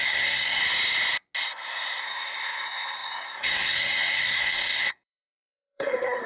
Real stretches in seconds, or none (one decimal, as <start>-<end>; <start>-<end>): 0.6-2.0